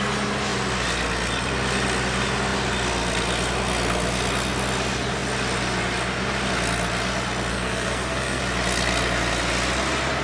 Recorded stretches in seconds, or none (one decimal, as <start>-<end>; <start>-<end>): 0.0-7.5; 8.4-10.2